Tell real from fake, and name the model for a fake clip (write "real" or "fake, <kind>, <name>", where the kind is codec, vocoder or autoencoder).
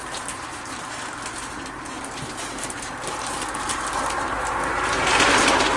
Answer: fake, vocoder, BigVGAN v2